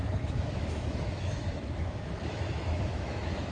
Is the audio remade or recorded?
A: remade